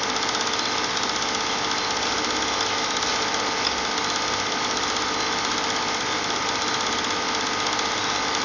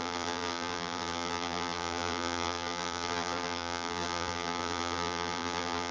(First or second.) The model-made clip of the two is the second